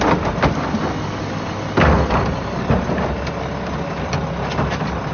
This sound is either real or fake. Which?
real